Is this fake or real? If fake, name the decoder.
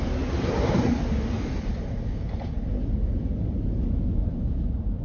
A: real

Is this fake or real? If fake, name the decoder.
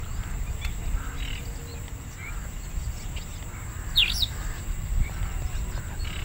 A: real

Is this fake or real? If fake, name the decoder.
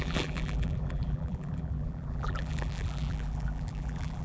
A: fake, vocoder, BigVGAN v2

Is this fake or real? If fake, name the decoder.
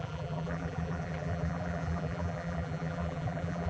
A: fake, vocoder, BigVGAN v2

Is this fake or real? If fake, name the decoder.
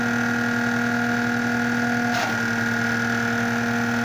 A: real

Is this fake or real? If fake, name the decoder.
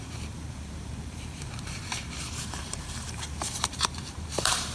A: fake, vocoder, BigVGAN v2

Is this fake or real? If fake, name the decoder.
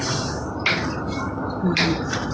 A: fake, vocoder, BigVGAN v2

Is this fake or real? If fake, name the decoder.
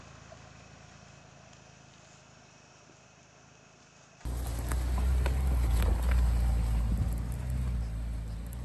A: real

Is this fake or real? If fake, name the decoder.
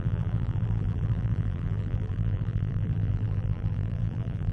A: fake, vocoder, BigVGAN v2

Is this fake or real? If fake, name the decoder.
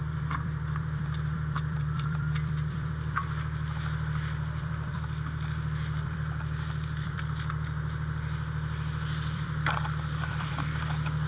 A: fake, vocoder, BigVGAN v2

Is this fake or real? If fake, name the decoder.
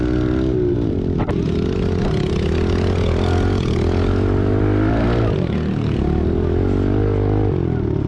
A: real